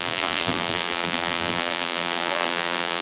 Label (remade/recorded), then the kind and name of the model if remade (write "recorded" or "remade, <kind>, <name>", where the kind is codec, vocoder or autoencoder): remade, vocoder, BigVGAN v2